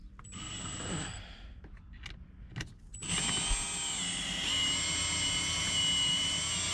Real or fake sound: real